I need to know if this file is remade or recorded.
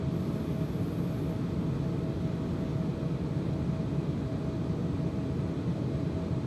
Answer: recorded